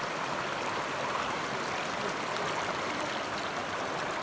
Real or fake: real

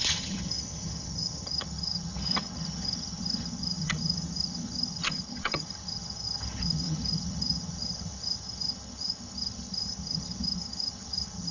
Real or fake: fake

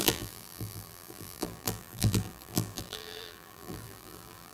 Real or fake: fake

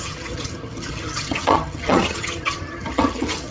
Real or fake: fake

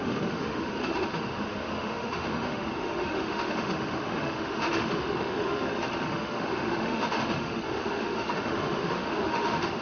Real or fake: fake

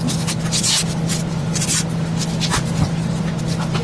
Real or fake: real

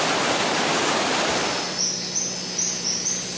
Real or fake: real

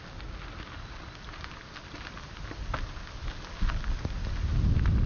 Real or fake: real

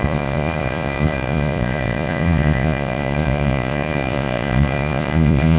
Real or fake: fake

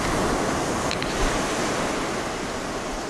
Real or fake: real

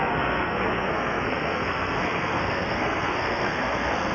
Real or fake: fake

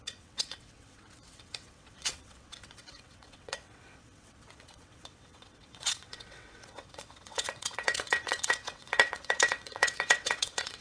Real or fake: fake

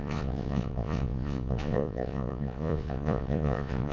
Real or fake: fake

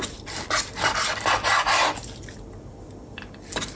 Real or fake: real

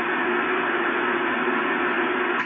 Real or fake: real